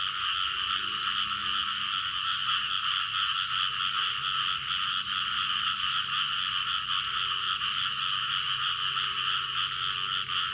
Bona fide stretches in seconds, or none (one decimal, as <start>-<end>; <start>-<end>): 0.0-10.5